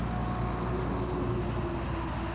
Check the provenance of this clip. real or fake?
real